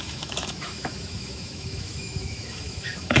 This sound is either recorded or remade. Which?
remade